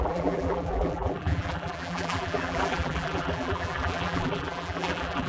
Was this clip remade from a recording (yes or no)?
yes